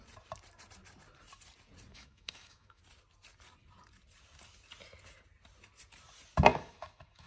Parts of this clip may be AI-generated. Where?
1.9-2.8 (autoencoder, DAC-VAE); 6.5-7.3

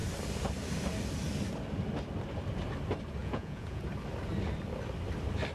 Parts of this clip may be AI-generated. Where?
3.2-3.8 (vocoder, Vocos)

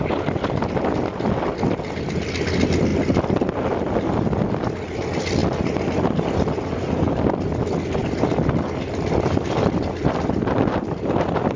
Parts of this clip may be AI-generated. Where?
0.0-5.4 (vocoder, BigVGAN v2); 6.2-11.6